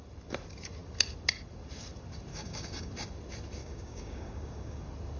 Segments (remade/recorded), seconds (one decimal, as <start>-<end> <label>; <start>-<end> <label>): 0.0-2.3 recorded; 2.3-2.9 remade; 2.9-3.6 recorded; 3.6-4.8 remade; 4.8-5.2 recorded